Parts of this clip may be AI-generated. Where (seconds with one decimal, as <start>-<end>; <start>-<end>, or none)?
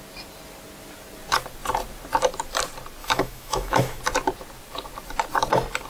3.0-4.0